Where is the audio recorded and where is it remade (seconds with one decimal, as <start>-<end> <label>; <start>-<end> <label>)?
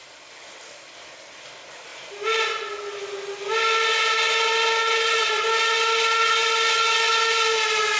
0.0-1.9 recorded; 1.9-2.5 remade; 2.5-8.0 recorded